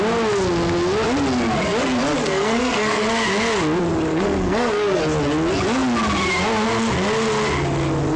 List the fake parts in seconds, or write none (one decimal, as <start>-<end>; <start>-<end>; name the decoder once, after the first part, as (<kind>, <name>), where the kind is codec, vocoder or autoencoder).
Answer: 2.2-3.0 (codec, SNAC); 4.1-5.0